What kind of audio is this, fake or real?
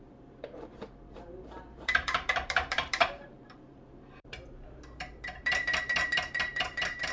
fake